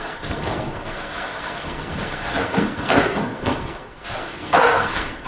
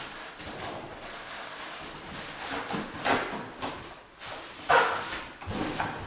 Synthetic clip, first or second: first